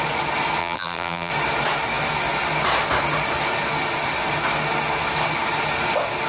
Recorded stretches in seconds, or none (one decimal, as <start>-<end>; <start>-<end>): 0.0-0.6; 1.3-6.3